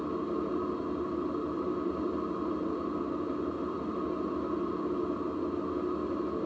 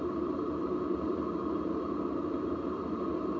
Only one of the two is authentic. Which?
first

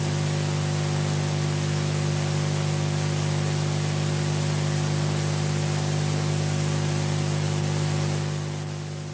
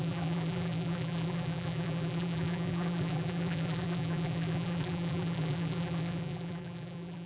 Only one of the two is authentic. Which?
first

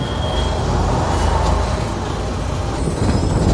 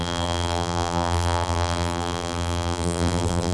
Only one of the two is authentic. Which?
first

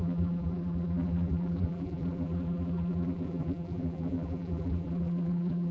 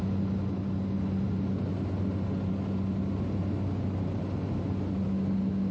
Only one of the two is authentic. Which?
second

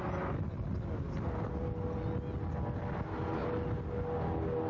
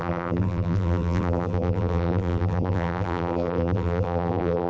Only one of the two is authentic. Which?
first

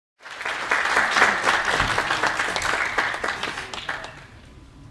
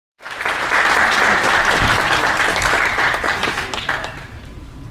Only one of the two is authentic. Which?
first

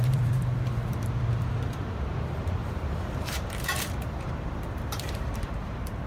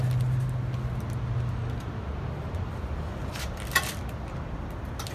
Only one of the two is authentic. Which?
second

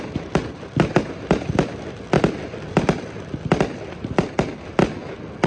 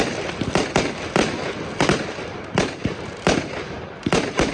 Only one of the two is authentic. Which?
first